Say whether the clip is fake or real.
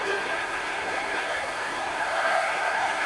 fake